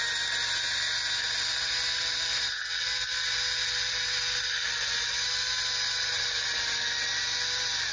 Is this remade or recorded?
recorded